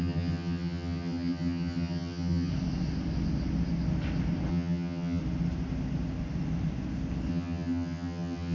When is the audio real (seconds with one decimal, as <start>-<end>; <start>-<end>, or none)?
2.5-4.5; 5.2-7.3